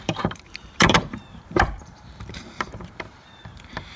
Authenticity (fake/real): fake